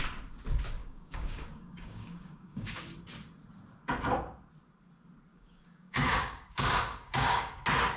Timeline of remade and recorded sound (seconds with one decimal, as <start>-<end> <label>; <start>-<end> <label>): 0.0-0.8 recorded; 0.8-2.8 remade; 2.8-5.3 recorded; 5.3-7.5 remade; 7.5-8.0 recorded